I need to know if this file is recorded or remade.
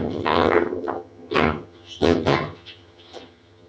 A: remade